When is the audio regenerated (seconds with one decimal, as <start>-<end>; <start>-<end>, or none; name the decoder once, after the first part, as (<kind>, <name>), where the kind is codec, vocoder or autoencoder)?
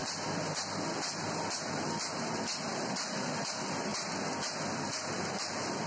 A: none